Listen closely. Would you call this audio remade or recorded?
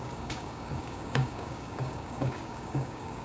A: remade